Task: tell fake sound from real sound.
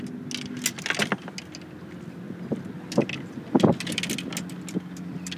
real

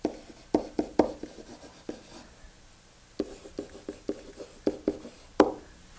real